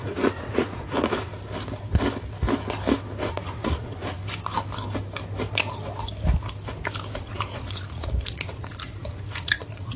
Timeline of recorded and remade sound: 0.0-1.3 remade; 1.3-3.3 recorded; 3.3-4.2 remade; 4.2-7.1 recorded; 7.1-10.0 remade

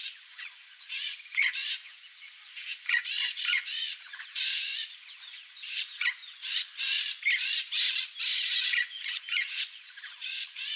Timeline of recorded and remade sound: 0.0-6.2 remade; 6.2-8.4 recorded; 8.4-10.8 remade

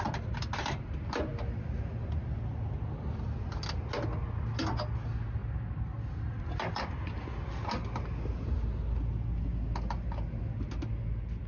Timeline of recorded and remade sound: 0.0-11.5 recorded

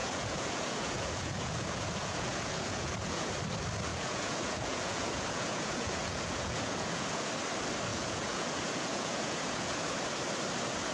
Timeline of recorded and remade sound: 0.0-3.3 remade; 3.3-3.9 recorded; 3.9-7.3 remade; 7.3-7.9 recorded; 7.9-10.0 remade; 10.0-10.9 recorded

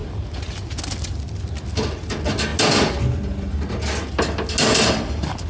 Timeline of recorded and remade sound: 0.0-5.5 recorded

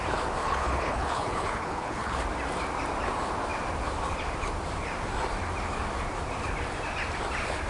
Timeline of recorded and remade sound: 0.0-0.4 recorded; 0.4-2.2 remade; 2.2-7.7 recorded

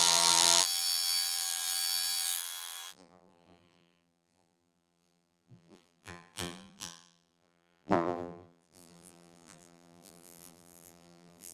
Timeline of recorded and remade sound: 0.0-11.5 remade

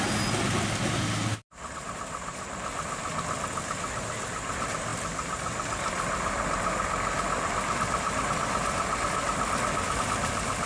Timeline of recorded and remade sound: 0.0-1.3 recorded; 1.3-2.5 remade; 2.5-4.9 recorded; 4.9-10.0 remade; 10.0-10.7 recorded